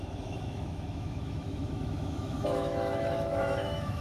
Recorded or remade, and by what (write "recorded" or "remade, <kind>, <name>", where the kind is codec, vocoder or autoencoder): remade, autoencoder, DAC-VAE